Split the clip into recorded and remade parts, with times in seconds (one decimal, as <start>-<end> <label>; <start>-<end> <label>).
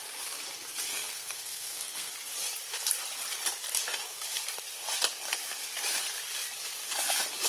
0.0-0.9 recorded; 0.9-2.1 remade; 2.1-7.5 recorded